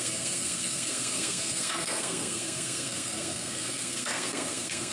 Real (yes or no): no